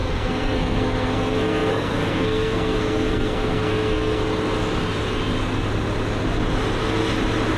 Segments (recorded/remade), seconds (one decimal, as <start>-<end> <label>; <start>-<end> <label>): 0.0-4.2 remade; 4.2-7.6 recorded